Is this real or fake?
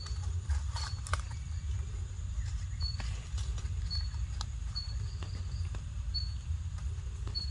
fake